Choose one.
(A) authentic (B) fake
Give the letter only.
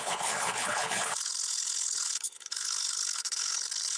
B